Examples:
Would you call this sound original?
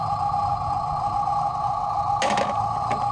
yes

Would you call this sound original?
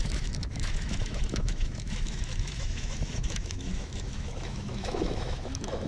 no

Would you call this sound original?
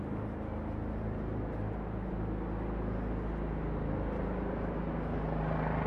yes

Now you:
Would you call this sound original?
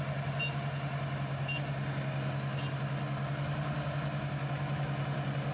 yes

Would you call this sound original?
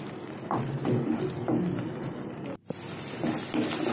yes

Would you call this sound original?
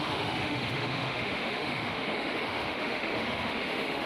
no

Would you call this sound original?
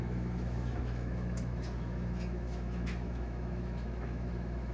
no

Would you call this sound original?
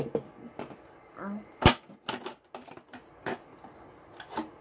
yes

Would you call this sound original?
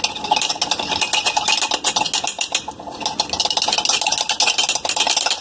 yes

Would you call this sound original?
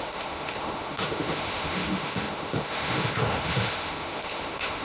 no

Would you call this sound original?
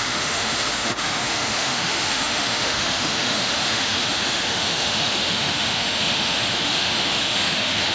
no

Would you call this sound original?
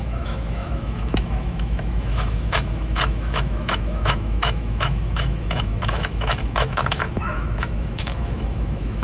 no